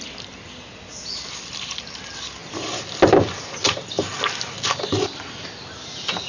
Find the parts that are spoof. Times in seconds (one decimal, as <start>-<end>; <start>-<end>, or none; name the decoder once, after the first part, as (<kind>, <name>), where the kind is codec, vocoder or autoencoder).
none